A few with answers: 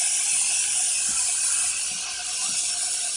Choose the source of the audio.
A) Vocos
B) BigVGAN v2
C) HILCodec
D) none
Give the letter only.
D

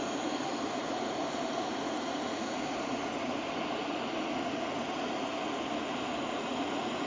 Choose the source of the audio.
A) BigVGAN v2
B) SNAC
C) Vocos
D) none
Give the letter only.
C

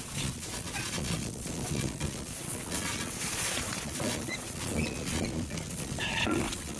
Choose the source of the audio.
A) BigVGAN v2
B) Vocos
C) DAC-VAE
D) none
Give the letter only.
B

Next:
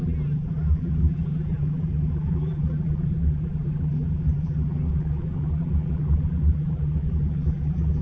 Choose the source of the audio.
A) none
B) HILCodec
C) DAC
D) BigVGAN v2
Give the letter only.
D